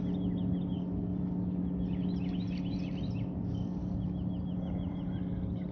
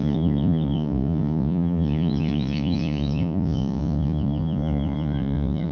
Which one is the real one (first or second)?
first